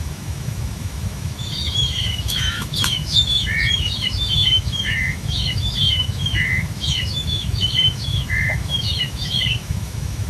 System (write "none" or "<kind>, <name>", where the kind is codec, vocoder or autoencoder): autoencoder, DAC-VAE